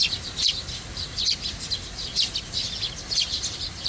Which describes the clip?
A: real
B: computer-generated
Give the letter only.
A